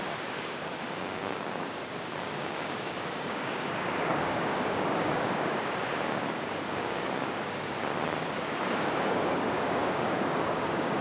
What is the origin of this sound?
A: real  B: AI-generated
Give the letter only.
B